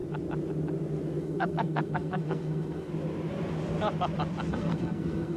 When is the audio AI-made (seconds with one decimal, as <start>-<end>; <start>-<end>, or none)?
1.2-2.9; 4.5-5.4